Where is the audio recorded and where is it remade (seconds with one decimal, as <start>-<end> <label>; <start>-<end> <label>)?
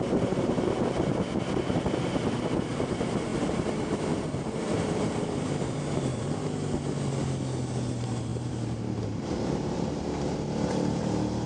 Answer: 0.0-1.1 remade; 1.1-2.7 recorded; 2.7-6.1 remade; 6.1-7.9 recorded; 7.9-11.5 remade